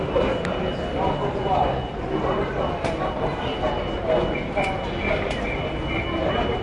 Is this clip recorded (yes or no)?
yes